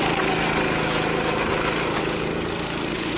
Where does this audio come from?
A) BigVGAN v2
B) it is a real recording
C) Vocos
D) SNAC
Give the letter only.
B